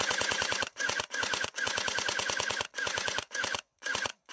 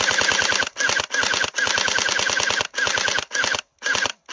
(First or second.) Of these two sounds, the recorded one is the second